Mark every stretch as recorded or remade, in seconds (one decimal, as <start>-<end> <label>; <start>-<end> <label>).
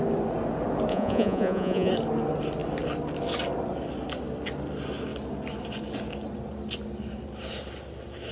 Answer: 0.0-0.9 recorded; 0.9-1.9 remade; 1.9-8.3 recorded